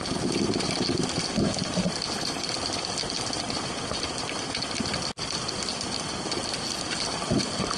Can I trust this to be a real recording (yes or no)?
yes